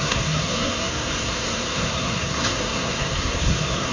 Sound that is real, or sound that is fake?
fake